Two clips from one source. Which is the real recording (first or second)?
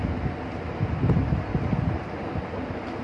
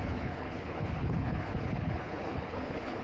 first